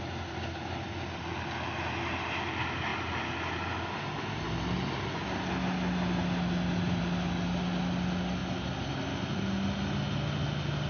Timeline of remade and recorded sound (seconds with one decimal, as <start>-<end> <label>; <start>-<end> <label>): 0.0-10.9 recorded